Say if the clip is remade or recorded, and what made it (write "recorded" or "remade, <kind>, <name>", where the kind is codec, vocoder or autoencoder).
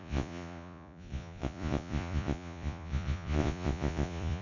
remade, vocoder, Vocos